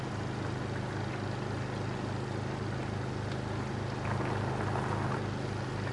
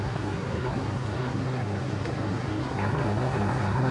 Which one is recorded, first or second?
first